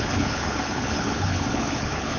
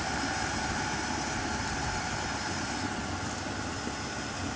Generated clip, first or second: first